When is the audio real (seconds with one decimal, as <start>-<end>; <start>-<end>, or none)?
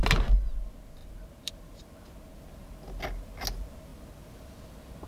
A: 0.0-5.1